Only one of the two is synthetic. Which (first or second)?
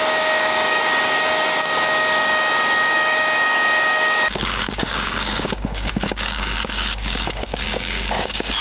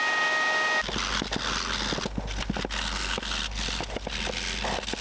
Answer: first